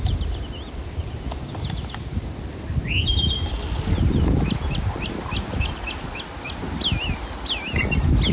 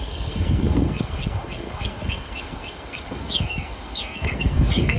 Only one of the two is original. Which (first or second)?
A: first